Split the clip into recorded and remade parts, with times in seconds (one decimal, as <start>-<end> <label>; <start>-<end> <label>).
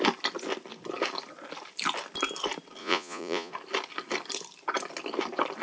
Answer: 0.0-2.8 recorded; 2.8-3.5 remade; 3.5-5.6 recorded